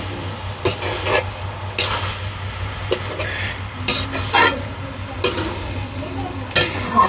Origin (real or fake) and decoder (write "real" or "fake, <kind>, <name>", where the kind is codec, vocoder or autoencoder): real